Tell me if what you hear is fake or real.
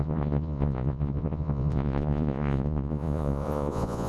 fake